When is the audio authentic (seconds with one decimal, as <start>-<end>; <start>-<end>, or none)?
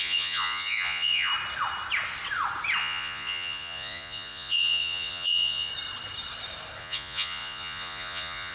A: 1.3-2.8; 5.7-6.8